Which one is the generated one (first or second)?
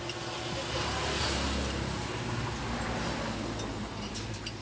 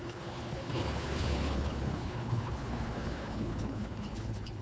second